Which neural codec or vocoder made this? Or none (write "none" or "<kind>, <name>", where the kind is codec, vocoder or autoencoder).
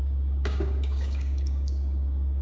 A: codec, DAC